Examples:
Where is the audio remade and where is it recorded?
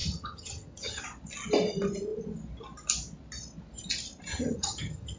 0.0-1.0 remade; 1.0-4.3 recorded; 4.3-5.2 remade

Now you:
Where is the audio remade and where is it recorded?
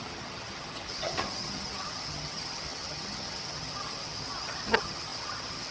0.0-5.7 remade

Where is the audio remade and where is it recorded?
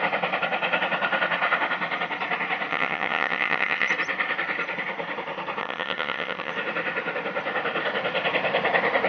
0.0-2.7 recorded; 2.7-3.9 remade; 3.9-5.6 recorded; 5.6-6.5 remade; 6.5-9.1 recorded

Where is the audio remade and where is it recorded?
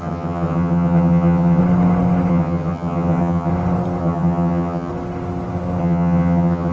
0.0-1.6 remade; 1.6-2.3 recorded; 2.3-3.5 remade; 3.5-4.0 recorded; 4.0-4.9 remade; 4.9-5.8 recorded; 5.8-6.7 remade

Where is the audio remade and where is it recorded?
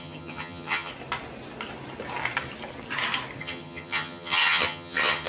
0.0-0.9 remade; 0.9-3.4 recorded; 3.4-5.3 remade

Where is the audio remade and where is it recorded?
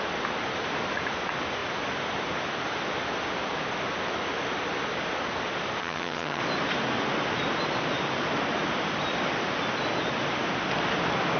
0.0-5.8 recorded; 5.8-6.4 remade; 6.4-11.4 recorded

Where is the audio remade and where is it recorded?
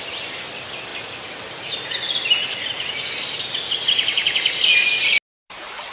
0.0-5.9 recorded